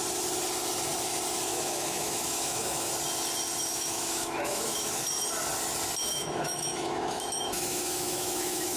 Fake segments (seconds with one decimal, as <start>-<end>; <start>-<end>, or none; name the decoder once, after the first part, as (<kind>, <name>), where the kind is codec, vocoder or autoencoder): 1.5-2.9 (autoencoder, DAC-VAE); 3.7-5.0; 6.0-8.8